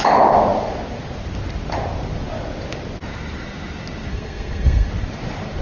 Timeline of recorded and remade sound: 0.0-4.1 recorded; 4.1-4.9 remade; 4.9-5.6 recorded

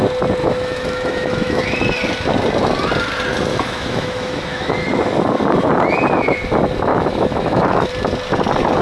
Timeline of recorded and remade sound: 0.0-0.4 recorded; 0.4-1.6 remade; 1.6-3.5 recorded; 3.5-4.7 remade; 4.7-6.9 recorded; 6.9-7.9 remade; 7.9-8.8 recorded

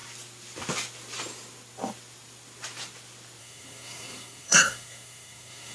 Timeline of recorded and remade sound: 0.0-3.4 recorded; 3.4-5.7 remade